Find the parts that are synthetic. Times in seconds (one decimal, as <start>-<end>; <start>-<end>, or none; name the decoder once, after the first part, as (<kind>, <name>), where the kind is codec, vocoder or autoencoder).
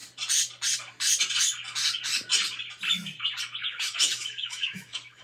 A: 3.6-5.2 (autoencoder, DAC-VAE)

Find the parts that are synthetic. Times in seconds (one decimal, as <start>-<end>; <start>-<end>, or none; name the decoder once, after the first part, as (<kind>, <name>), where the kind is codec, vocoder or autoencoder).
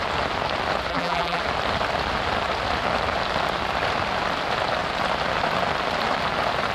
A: 0.9-1.4 (vocoder, BigVGAN v2)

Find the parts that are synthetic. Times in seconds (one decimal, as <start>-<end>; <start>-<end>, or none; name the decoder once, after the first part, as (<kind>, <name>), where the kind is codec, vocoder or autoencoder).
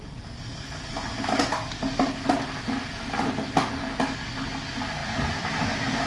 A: none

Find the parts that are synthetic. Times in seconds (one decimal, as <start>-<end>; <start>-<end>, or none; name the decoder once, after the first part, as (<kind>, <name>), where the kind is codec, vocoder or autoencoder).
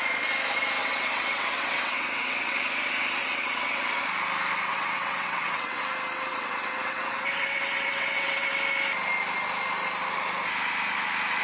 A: 0.8-2.6 (vocoder, WaveNeXt); 3.2-4.0; 4.7-5.8; 6.3-8.5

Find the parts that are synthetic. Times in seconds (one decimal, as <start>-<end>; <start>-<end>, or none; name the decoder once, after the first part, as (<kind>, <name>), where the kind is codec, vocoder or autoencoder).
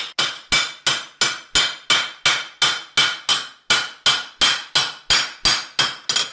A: none